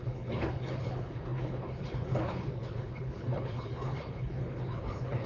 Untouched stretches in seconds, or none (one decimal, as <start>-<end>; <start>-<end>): none